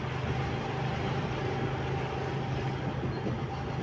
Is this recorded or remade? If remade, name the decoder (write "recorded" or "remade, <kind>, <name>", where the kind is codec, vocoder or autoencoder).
recorded